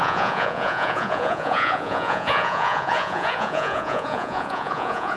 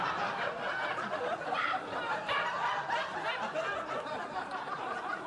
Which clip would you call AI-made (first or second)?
first